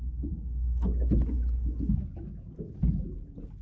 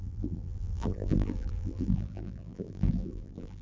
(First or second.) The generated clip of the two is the second